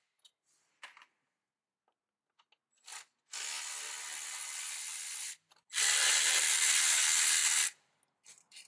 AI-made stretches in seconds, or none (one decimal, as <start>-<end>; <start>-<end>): 4.1-6.7; 7.4-8.0